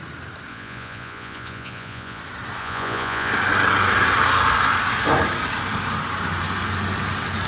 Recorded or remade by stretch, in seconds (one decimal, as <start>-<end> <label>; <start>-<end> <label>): 0.0-0.5 recorded; 0.5-2.2 remade; 2.2-2.6 recorded; 2.6-3.3 remade; 3.3-7.5 recorded